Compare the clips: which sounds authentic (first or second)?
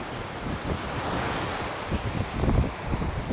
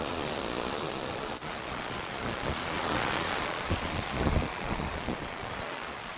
first